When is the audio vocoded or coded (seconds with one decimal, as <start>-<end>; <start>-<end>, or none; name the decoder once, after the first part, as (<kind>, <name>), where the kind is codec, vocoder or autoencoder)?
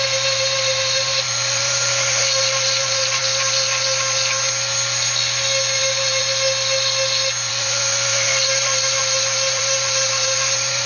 0.0-3.2 (vocoder, BigVGAN v2); 5.8-6.2; 7.5-10.9